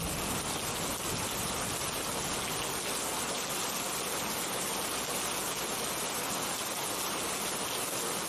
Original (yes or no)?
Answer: yes